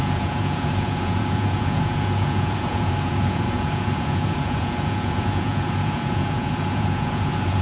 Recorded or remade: remade